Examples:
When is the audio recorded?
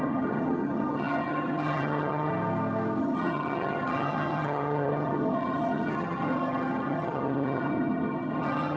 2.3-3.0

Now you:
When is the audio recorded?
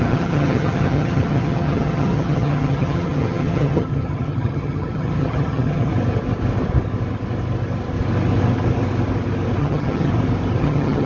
5.9-9.6; 10.1-10.6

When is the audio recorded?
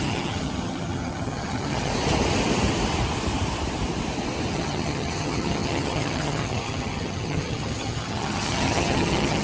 1.9-4.5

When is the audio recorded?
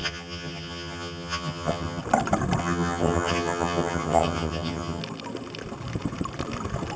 2.0-2.6; 5.0-7.0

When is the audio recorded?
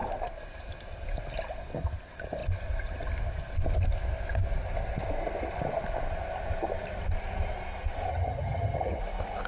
0.0-8.1; 9.0-9.5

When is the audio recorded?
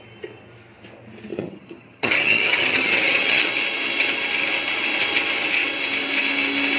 0.0-1.3; 3.5-6.8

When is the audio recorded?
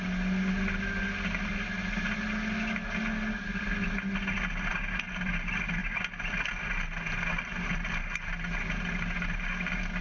0.0-10.0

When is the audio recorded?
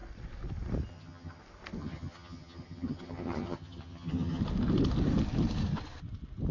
0.0-0.9; 1.4-1.8; 4.4-6.5